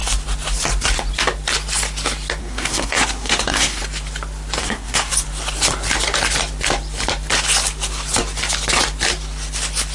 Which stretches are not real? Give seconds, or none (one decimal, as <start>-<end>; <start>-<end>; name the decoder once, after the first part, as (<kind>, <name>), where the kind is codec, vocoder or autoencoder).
2.4-3.8 (codec, SNAC); 4.6-5.1